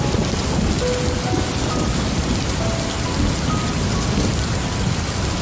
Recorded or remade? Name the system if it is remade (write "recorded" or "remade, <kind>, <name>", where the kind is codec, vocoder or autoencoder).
recorded